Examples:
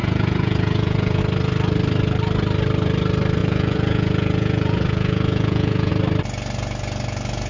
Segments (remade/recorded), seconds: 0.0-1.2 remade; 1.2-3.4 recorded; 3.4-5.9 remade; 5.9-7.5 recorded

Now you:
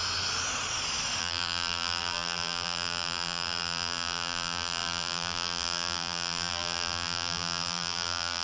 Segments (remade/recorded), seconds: 0.0-1.2 recorded; 1.2-8.4 remade